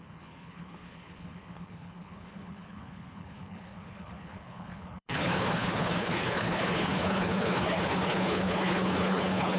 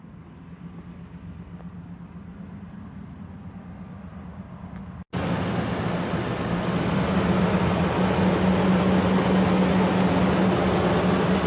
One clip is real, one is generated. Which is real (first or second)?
second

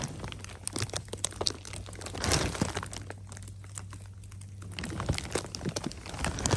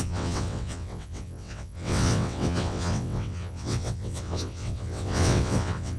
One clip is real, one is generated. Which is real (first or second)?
first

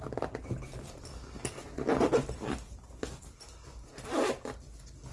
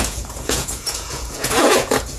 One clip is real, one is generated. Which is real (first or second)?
first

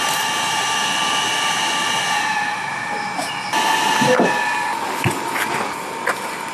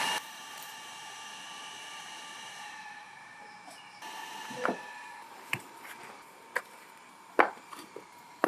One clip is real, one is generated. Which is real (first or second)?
first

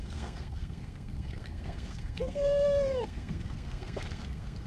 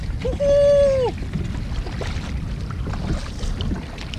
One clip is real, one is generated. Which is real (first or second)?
second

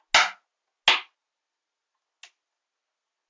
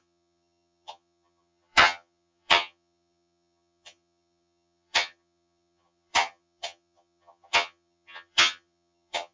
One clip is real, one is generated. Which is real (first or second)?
first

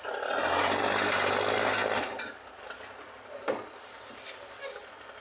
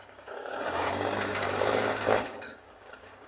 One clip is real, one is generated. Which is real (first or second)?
first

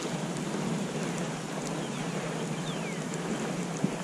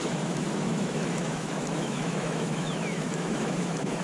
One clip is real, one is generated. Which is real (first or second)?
first